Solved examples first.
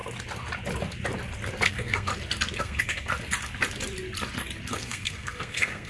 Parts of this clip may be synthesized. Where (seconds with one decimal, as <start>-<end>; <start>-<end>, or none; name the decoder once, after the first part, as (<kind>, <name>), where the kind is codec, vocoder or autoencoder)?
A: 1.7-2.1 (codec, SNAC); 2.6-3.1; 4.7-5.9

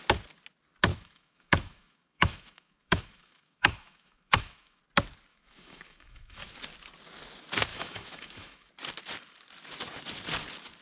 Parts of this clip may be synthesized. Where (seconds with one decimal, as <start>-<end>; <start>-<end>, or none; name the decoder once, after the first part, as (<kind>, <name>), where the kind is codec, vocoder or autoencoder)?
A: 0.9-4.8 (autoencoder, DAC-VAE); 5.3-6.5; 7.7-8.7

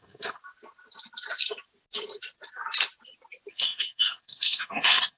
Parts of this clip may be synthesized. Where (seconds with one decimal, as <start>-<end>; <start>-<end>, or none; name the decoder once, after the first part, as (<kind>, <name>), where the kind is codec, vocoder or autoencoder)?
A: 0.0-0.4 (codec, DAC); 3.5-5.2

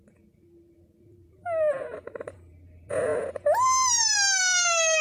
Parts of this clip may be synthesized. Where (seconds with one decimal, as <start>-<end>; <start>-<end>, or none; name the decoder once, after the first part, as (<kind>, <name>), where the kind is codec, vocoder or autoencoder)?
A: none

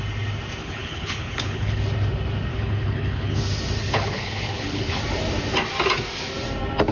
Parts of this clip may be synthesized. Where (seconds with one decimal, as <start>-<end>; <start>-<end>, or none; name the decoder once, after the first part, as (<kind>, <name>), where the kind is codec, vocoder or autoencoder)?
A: 0.6-1.8 (codec, HILCodec); 2.5-3.4; 3.8-5.0